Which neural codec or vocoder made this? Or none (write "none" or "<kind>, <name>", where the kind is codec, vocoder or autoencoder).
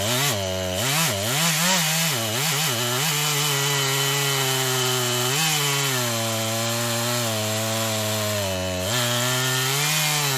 none